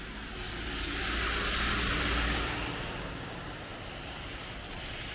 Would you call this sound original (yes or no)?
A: yes